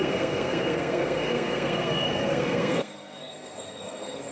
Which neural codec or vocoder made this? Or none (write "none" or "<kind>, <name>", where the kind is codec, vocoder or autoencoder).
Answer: codec, SNAC